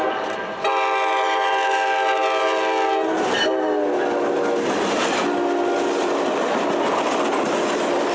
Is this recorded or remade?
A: recorded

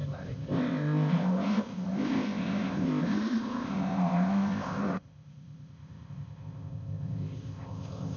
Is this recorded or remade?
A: remade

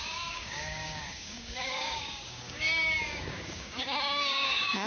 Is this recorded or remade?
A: remade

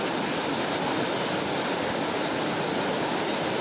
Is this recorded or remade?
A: recorded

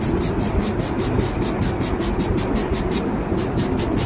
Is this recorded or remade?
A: recorded